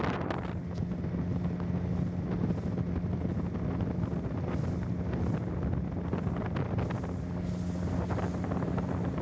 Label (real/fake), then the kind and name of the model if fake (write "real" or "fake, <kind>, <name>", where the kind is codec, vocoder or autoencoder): real